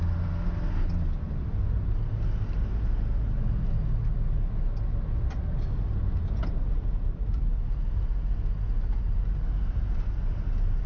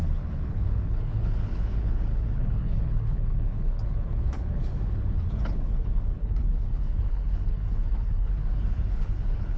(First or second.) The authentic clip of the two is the first